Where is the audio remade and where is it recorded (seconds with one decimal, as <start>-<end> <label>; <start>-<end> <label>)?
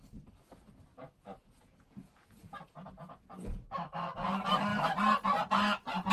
0.0-0.9 recorded; 0.9-3.6 remade; 3.6-6.1 recorded